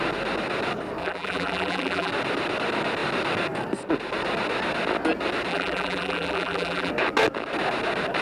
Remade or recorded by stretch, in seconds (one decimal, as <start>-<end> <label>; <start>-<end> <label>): 0.0-1.0 recorded; 1.0-2.1 remade; 2.1-5.5 recorded; 5.5-6.9 remade; 6.9-8.2 recorded